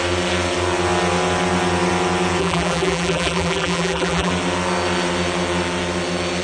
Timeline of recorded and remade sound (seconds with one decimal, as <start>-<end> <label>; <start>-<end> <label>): 0.0-2.4 recorded; 2.4-4.3 remade; 4.3-6.4 recorded